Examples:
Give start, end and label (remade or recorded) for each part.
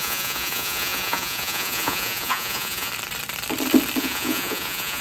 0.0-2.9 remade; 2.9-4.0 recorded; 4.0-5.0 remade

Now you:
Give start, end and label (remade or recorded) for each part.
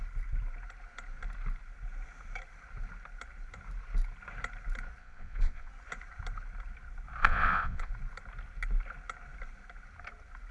0.0-5.0 recorded; 5.0-5.7 remade; 5.7-7.2 recorded; 7.2-7.9 remade; 7.9-10.5 recorded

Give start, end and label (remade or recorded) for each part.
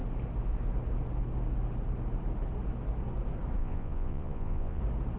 0.0-3.6 recorded; 3.6-4.8 remade; 4.8-5.2 recorded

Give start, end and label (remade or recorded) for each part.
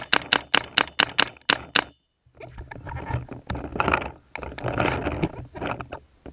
0.0-6.3 recorded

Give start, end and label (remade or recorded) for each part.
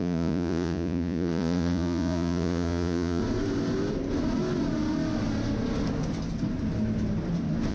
0.0-3.2 remade; 3.2-7.7 recorded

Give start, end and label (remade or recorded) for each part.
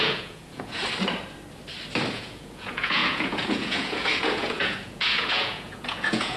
0.0-0.8 remade; 0.8-2.1 recorded; 2.1-6.4 remade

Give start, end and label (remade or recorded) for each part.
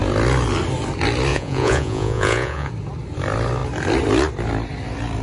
0.0-1.3 recorded; 1.3-2.7 remade; 2.7-5.2 recorded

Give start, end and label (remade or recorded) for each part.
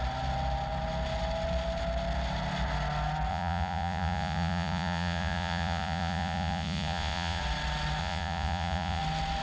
0.0-3.3 recorded; 3.3-7.4 remade; 7.4-8.0 recorded; 8.0-9.0 remade; 9.0-9.4 recorded